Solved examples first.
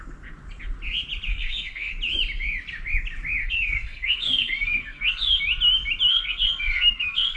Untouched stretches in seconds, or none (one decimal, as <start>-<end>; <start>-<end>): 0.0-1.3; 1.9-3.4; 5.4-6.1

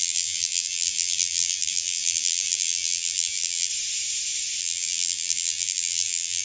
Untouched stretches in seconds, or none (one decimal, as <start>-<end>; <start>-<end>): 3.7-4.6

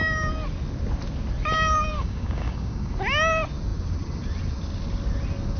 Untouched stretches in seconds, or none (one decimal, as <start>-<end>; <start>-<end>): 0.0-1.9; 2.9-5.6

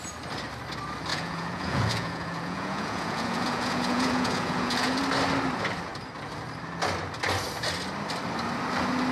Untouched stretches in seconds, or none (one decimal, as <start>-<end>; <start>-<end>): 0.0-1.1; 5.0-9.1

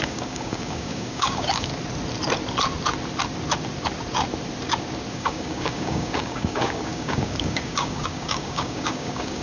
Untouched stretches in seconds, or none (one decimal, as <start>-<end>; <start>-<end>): 1.7-5.1

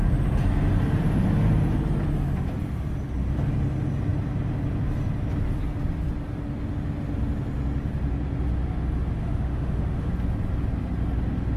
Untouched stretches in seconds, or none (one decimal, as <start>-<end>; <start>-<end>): 0.0-9.2; 10.1-11.6

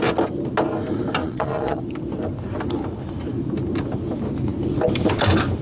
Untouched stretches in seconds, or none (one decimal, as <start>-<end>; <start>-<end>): 0.0-1.2; 1.8-5.6

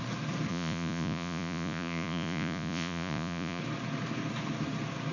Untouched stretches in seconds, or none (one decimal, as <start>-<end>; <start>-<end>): 0.0-0.5; 3.6-5.1